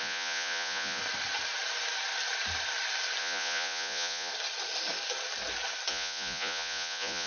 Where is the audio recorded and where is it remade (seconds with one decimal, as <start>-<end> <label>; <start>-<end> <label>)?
0.0-1.0 remade; 1.0-3.2 recorded; 3.2-4.3 remade; 4.3-5.9 recorded; 5.9-7.3 remade